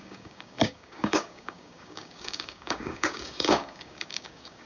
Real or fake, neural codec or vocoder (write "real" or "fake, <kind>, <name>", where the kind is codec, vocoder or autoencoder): fake, codec, DAC